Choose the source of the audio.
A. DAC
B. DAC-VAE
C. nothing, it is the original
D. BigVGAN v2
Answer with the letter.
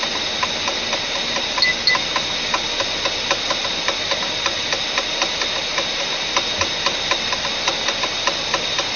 C